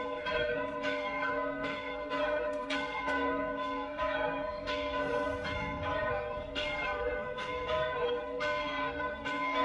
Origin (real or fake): fake